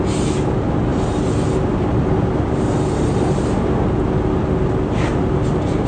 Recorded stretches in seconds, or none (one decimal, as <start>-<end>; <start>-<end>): 0.0-5.9